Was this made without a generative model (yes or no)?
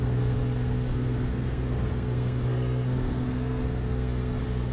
no